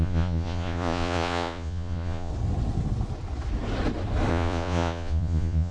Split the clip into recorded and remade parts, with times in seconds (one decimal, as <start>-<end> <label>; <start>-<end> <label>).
0.0-2.3 remade; 2.3-4.3 recorded; 4.3-5.7 remade